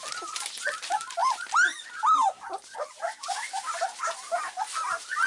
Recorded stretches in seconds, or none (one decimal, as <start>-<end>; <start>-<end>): 0.0-5.3